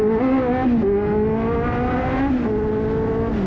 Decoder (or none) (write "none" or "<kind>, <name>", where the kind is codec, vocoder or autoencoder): none